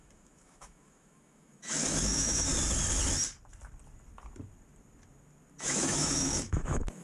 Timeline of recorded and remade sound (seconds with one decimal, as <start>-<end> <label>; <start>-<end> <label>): 0.0-2.5 remade; 2.5-5.6 recorded; 5.6-7.0 remade